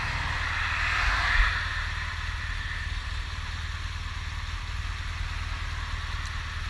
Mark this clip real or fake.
real